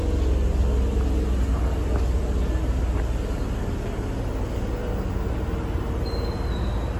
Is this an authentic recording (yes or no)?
yes